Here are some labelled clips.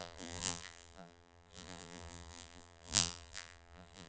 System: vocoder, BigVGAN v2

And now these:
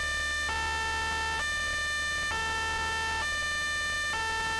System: none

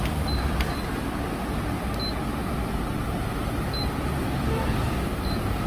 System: none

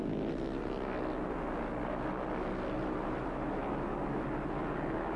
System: none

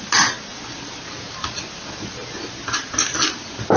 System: none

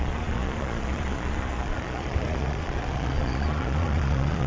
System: vocoder, Vocos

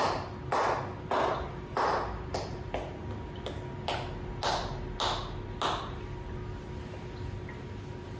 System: none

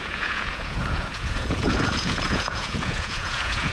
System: vocoder, Vocos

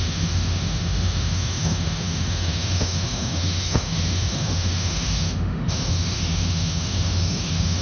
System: autoencoder, DAC-VAE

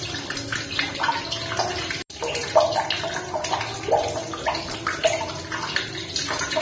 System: none